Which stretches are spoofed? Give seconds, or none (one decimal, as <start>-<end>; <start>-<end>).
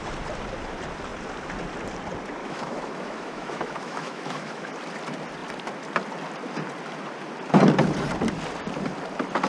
2.4-4.7